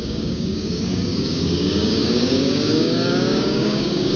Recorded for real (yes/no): no